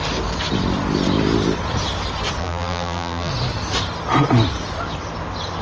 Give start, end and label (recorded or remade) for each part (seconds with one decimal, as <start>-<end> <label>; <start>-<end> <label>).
0.0-2.4 recorded; 2.4-3.3 remade; 3.3-5.6 recorded